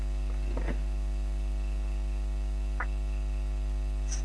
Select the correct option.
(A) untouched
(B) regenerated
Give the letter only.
A